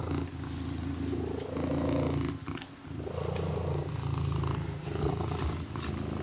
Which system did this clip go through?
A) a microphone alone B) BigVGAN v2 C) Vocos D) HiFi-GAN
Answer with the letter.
A